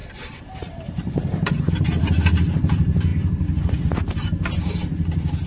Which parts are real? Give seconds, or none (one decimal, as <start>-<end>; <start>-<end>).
1.7-3.1; 3.8-5.5